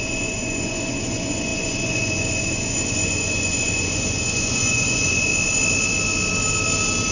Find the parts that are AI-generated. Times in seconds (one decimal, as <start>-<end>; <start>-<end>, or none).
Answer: 0.0-5.3